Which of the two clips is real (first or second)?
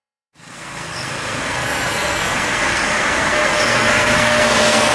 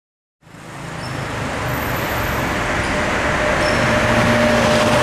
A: second